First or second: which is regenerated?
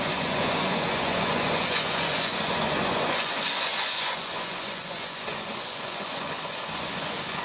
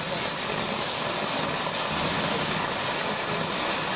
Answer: first